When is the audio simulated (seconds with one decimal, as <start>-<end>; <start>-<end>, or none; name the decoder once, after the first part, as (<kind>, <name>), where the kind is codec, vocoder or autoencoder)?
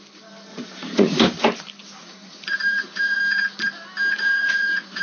0.5-1.2 (vocoder, Vocos); 2.0-3.2; 4.1-5.0